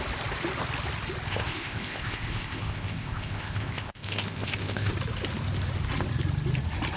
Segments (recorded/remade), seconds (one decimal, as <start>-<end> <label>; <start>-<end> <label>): 0.0-1.3 recorded; 1.3-4.9 remade; 4.9-7.0 recorded